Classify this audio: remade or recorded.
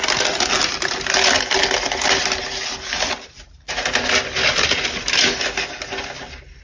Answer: recorded